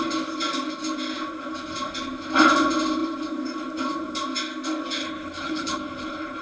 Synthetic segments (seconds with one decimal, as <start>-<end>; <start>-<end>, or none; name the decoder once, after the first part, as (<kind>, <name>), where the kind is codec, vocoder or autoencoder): 5.0-6.4 (codec, HILCodec)